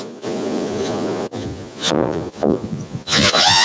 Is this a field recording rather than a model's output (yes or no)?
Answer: no